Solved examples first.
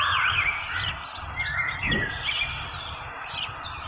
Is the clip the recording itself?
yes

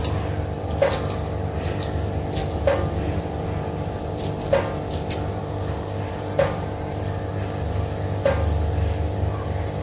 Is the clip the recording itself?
yes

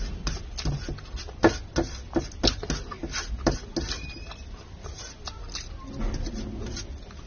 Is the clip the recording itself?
yes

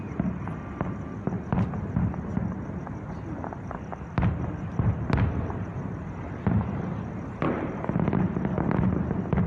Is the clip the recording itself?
yes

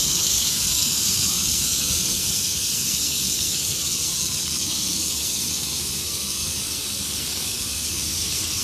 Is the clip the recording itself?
no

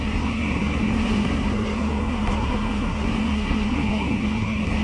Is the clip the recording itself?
no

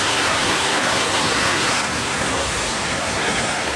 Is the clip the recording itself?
no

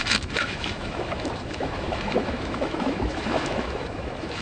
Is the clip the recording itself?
no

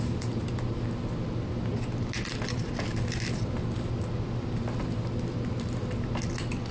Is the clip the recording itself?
yes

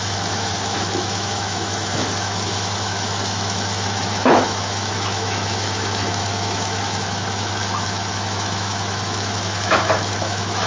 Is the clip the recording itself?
no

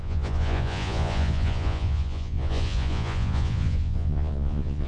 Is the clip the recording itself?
no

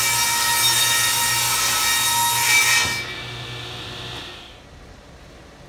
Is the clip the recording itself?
yes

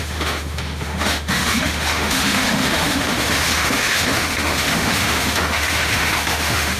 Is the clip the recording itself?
no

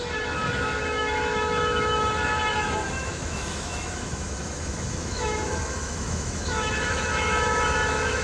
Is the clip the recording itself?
no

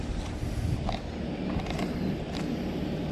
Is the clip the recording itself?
yes